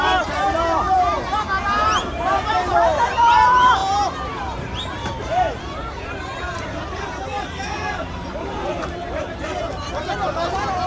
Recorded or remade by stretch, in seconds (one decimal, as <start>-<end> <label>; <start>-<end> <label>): 0.0-3.8 remade; 3.8-4.4 recorded; 4.4-10.9 remade